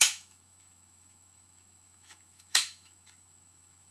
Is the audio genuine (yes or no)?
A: no